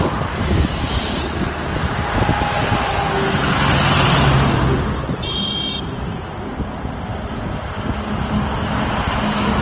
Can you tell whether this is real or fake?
real